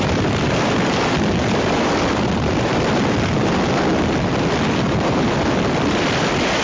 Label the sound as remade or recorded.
remade